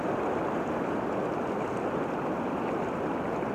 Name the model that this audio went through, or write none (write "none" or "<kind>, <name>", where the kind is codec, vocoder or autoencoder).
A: none